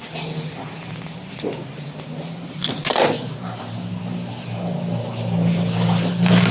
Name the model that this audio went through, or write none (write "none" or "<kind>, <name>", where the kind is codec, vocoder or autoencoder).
none